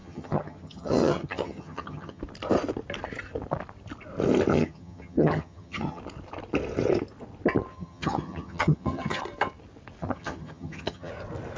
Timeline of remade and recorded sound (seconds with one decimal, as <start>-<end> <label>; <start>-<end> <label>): 0.0-2.2 remade; 2.2-4.5 recorded; 4.5-6.0 remade; 6.0-7.7 recorded; 7.7-9.2 remade; 9.2-10.0 recorded; 10.0-11.1 remade; 11.1-11.6 recorded